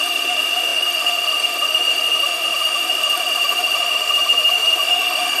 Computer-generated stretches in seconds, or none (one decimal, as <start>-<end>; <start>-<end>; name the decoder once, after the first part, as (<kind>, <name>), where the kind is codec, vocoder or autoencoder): 0.0-5.4 (autoencoder, DAC-VAE)